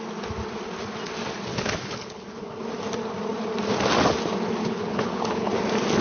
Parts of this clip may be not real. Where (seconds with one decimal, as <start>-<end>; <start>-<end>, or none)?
1.5-2.6; 4.6-5.6